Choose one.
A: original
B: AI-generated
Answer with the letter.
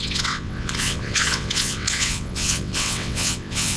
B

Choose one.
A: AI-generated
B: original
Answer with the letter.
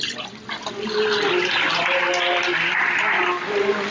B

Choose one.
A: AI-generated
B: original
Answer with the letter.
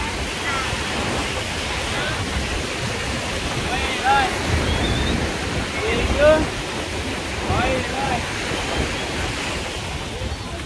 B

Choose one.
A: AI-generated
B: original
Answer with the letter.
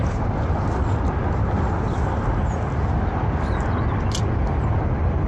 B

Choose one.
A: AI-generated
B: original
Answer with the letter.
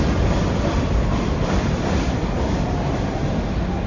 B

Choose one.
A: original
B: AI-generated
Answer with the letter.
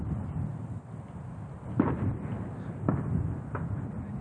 A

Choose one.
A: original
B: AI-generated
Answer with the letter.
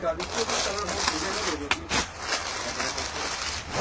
A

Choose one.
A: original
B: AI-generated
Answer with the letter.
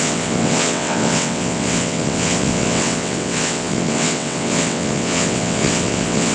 B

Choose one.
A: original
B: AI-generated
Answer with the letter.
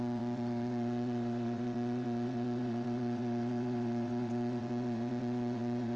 B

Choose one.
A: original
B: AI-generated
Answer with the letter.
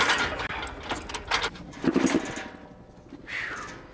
A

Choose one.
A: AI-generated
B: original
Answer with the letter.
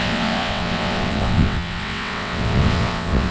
A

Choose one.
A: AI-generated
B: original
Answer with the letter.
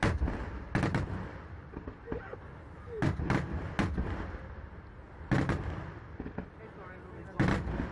B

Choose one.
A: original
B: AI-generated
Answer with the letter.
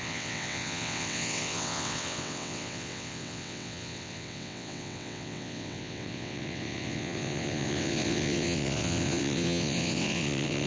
B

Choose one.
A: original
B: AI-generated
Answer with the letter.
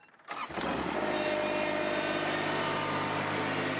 A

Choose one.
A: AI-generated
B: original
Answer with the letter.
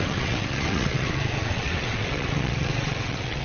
A